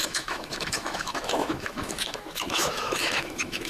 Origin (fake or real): fake